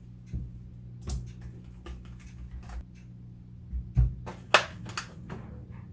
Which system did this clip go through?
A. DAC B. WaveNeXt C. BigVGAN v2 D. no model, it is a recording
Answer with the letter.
D